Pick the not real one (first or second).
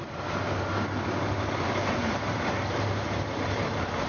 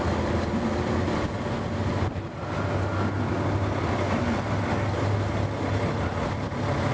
first